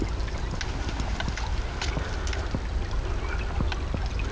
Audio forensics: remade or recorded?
recorded